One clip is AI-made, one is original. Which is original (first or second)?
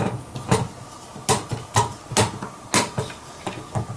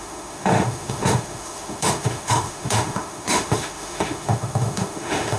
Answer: first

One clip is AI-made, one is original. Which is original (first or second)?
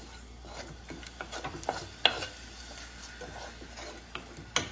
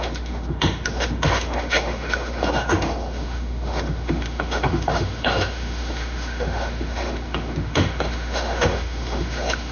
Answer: first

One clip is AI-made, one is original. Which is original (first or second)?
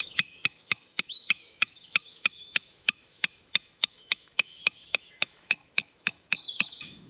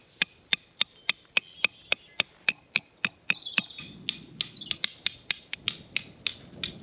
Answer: second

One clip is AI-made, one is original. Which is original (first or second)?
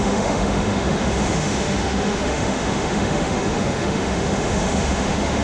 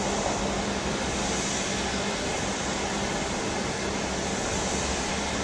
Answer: second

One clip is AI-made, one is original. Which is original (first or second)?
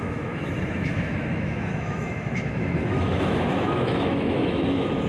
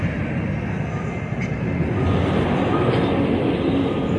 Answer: second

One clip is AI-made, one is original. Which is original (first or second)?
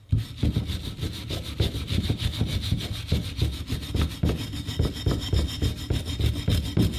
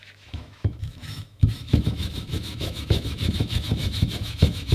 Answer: first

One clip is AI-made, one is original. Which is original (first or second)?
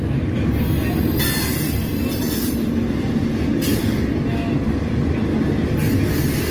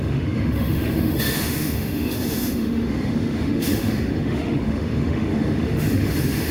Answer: first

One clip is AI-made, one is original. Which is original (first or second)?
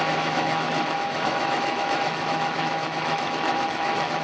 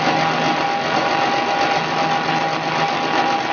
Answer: second